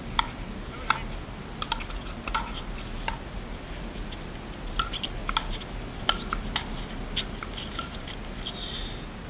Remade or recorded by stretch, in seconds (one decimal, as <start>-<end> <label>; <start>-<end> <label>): 0.0-9.3 recorded